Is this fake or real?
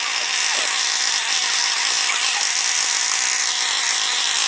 real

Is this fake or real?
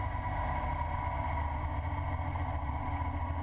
real